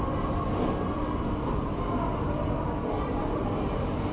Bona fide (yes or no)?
yes